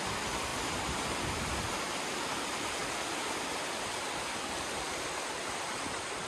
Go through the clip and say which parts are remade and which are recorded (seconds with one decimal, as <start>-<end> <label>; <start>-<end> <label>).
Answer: 0.0-0.5 recorded; 0.5-1.8 remade; 1.8-6.3 recorded